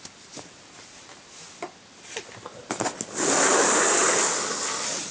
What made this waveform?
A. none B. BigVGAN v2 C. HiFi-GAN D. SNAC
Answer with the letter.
A